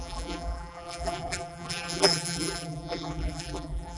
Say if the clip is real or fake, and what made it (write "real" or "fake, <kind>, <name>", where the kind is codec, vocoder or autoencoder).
fake, vocoder, BigVGAN v2